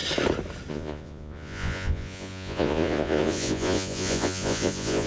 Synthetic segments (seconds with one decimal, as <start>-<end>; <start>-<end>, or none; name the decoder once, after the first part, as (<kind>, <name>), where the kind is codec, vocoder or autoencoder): 0.7-5.1 (vocoder, Vocos)